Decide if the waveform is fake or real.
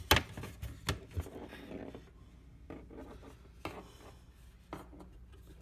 real